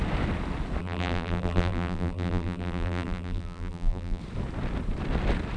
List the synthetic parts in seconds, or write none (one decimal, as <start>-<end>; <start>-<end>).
0.8-4.2